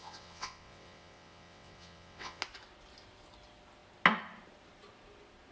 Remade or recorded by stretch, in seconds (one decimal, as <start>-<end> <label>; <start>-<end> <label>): 0.0-2.4 remade; 2.4-5.5 recorded